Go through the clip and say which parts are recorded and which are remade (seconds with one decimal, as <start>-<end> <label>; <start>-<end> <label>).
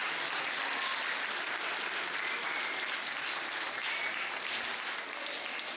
0.0-5.8 recorded